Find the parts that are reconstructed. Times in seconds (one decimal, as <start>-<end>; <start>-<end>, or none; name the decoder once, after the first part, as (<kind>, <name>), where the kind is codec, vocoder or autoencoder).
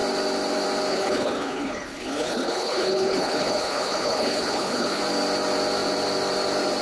0.9-5.0 (codec, HILCodec)